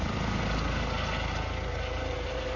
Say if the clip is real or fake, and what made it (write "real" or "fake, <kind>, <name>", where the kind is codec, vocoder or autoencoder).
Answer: real